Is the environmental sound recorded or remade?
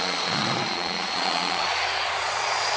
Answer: remade